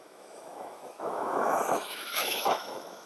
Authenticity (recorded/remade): remade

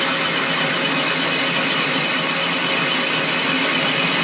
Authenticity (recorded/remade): recorded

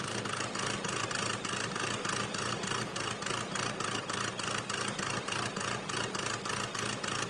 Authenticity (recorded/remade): remade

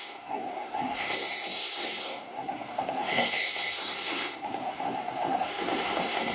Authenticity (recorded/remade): remade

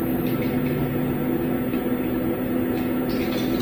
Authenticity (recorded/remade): recorded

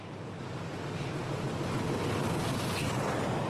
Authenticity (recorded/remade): recorded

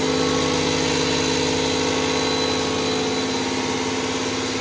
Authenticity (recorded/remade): recorded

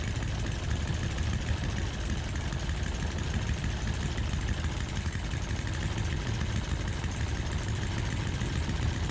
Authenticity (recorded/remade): recorded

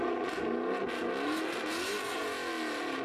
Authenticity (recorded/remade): recorded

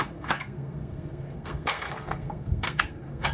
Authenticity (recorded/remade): remade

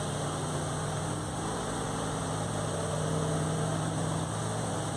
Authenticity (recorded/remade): recorded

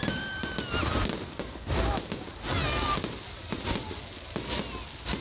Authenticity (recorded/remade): recorded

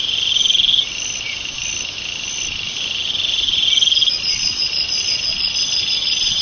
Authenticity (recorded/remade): recorded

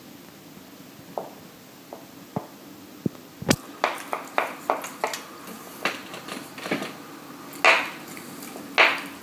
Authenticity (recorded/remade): recorded